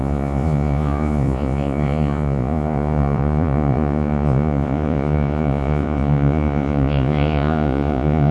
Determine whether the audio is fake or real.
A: fake